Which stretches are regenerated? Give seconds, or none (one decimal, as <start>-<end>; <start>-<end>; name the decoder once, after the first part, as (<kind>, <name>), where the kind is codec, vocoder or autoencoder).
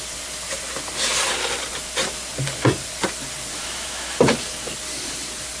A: 3.5-4.3 (autoencoder, DAC-VAE)